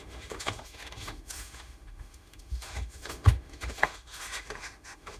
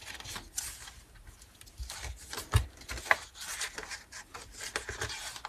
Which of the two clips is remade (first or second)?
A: first